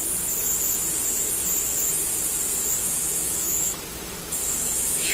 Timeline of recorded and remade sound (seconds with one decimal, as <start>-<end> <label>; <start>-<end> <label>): 0.0-2.8 recorded; 2.8-3.8 remade; 3.8-4.4 recorded; 4.4-5.1 remade